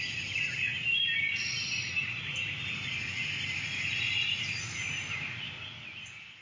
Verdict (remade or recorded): recorded